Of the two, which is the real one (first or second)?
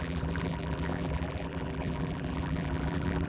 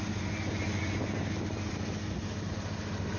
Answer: second